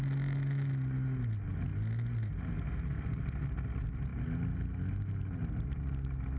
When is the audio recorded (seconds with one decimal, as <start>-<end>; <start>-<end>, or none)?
0.0-6.4